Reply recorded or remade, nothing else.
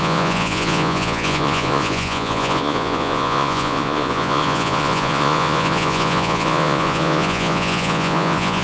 remade